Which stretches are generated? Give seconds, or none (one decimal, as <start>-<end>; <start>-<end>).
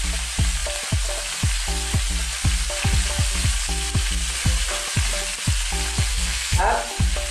6.1-6.6